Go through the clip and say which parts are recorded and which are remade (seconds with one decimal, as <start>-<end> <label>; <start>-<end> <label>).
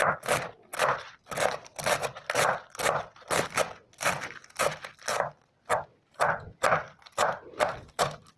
0.0-8.4 recorded